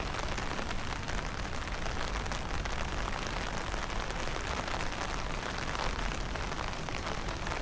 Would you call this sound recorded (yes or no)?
yes